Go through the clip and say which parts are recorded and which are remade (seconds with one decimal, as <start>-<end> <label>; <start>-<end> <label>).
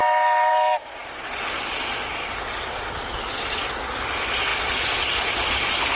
0.0-6.0 recorded